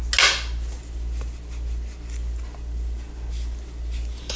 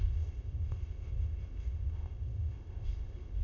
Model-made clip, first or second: second